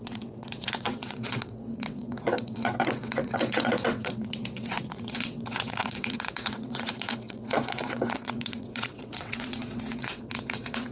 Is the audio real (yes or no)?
no